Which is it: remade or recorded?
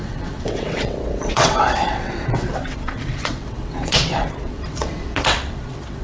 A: remade